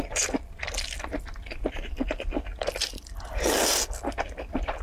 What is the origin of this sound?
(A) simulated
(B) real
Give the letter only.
B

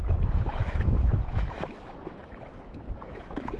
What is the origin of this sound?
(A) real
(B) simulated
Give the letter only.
B